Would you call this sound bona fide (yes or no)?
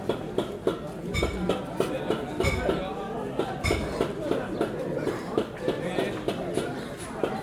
yes